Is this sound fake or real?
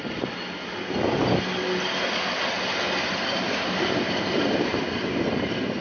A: real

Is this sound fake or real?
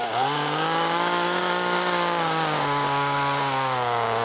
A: fake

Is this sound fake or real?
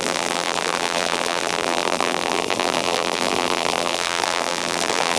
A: fake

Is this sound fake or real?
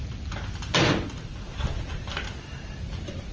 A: real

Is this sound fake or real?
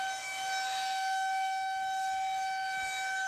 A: fake